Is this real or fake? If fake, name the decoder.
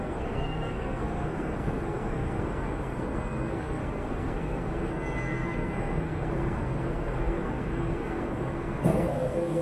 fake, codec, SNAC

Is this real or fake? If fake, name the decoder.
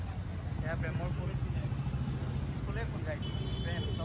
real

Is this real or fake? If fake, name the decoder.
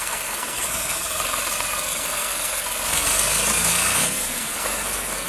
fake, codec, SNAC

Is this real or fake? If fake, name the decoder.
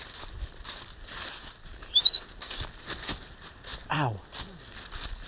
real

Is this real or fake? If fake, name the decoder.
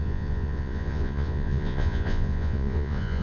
fake, vocoder, Vocos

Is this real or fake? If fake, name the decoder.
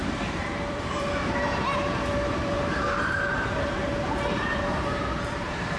fake, vocoder, BigVGAN v2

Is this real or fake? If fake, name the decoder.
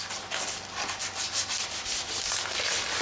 real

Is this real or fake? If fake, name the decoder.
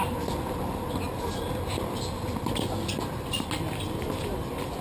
real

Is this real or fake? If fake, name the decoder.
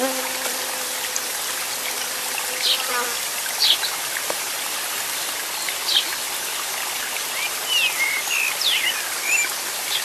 real